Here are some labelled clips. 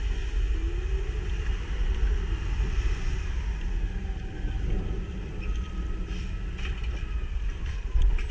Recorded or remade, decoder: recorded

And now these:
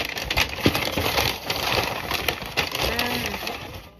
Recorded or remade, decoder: recorded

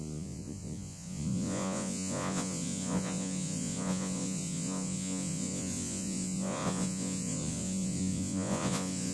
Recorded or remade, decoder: remade, vocoder, Vocos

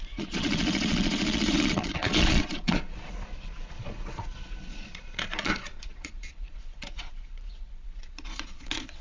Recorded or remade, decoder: remade, vocoder, Vocos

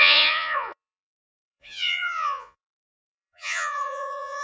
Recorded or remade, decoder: remade, vocoder, Vocos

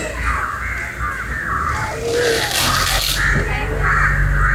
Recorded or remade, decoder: recorded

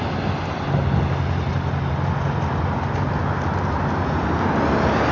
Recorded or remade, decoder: recorded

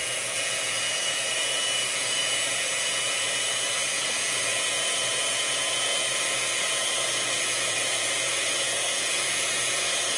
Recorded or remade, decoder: remade, vocoder, Vocos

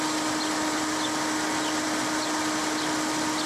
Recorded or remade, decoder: recorded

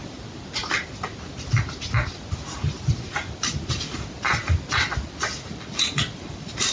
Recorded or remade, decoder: recorded